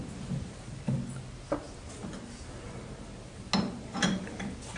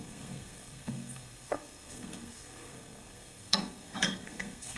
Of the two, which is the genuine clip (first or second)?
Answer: first